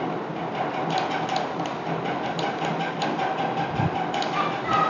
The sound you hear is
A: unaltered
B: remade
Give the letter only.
A